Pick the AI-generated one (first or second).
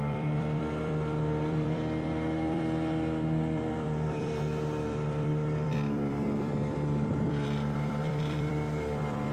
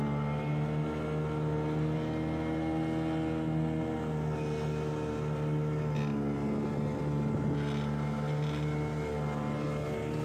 first